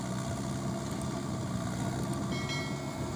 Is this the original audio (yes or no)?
yes